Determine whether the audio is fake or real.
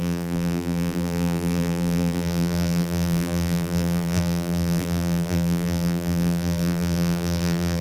fake